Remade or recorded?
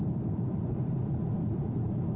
remade